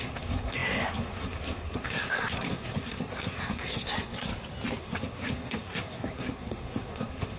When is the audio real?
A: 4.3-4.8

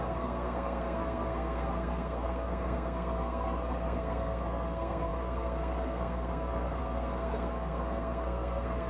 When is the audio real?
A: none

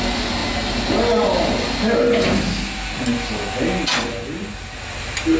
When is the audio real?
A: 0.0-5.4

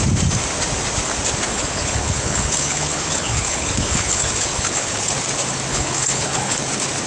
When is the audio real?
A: 0.0-1.5; 5.1-5.7; 6.6-7.1

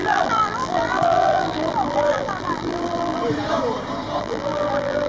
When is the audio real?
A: 3.2-4.2

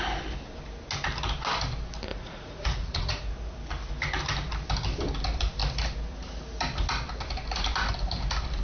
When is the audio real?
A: 0.0-2.1; 3.3-8.6